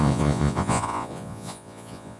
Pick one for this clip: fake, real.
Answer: fake